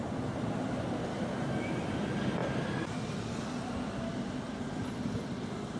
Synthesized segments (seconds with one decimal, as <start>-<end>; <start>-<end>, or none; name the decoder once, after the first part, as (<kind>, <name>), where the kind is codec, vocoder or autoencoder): none